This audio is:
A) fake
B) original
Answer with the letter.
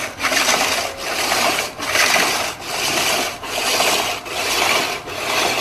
B